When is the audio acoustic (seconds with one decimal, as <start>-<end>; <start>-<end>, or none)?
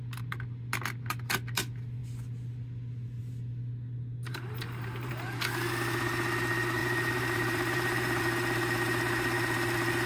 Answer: 0.0-4.2; 5.1-6.8; 8.2-10.1